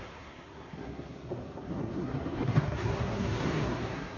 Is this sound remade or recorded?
remade